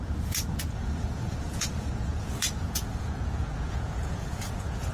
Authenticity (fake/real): fake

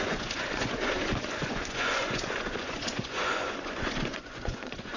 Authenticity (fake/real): fake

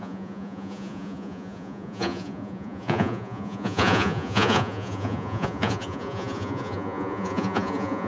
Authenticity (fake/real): fake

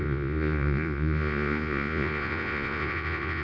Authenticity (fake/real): fake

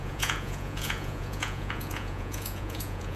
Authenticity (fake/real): fake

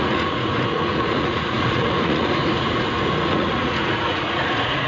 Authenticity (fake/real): fake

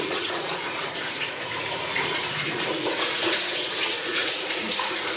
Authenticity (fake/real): fake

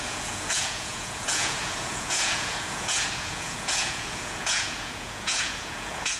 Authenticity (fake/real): fake